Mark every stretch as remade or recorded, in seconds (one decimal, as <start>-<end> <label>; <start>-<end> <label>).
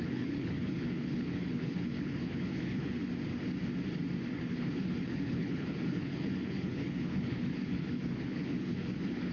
0.0-3.0 remade; 3.0-4.3 recorded; 4.3-9.3 remade